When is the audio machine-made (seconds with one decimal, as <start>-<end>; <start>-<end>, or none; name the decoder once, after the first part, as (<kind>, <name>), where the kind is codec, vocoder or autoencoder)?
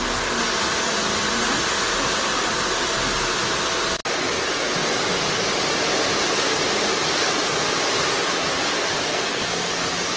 9.1-9.7 (codec, SNAC)